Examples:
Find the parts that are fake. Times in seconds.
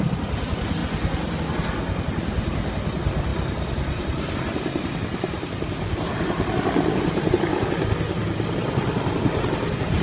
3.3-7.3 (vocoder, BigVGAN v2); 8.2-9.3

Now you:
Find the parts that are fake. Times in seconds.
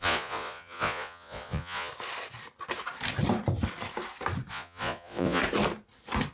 0.0-1.9 (vocoder, Vocos); 4.5-5.4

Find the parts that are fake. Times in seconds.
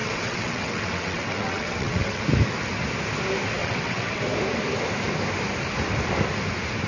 0.0-2.2 (vocoder, WaveNeXt); 3.6-4.2